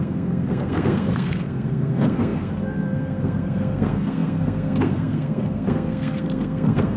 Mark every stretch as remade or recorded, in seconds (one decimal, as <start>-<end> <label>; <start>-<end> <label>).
0.0-7.0 remade